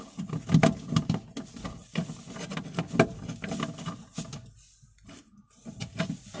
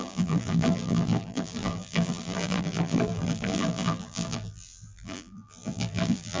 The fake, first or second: second